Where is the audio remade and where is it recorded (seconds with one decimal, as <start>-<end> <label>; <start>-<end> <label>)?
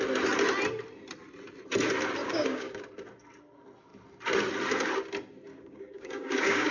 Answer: 0.0-2.2 recorded; 2.2-2.8 remade; 2.8-5.5 recorded; 5.5-6.7 remade